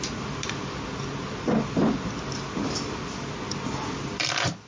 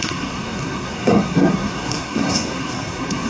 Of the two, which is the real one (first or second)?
first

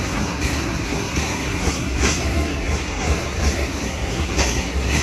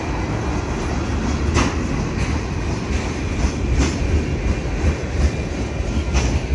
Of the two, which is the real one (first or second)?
second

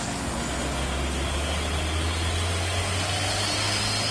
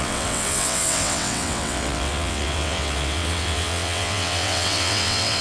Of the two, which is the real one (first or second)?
first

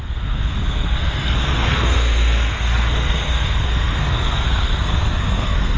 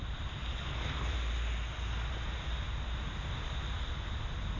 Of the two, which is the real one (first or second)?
second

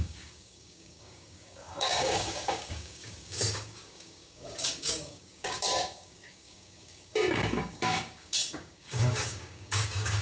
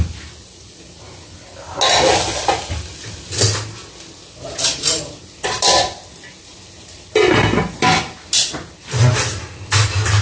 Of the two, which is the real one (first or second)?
second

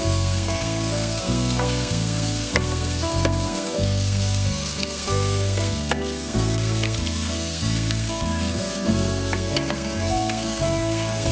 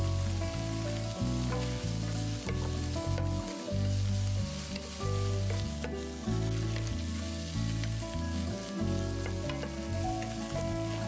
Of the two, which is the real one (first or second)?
second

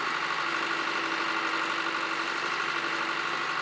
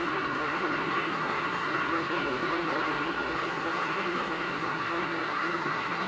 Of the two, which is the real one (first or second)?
first